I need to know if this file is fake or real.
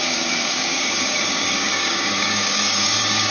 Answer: fake